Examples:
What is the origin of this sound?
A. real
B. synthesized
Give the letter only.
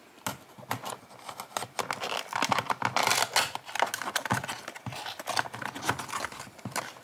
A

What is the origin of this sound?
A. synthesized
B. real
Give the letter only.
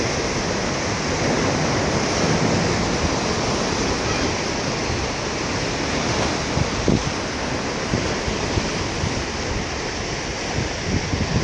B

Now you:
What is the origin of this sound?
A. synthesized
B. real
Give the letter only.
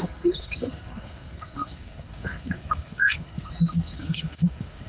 A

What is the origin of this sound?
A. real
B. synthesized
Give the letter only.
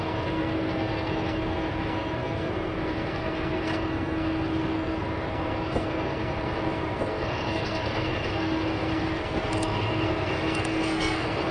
B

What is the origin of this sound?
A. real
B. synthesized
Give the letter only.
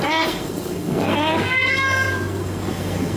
B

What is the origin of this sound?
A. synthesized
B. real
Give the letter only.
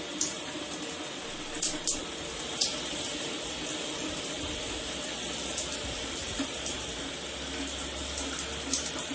B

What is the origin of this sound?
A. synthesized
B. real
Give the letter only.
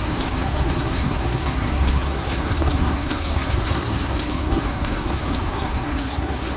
A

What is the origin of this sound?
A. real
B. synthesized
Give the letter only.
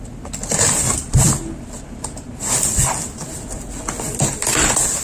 A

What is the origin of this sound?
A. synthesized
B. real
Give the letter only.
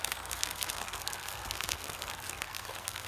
A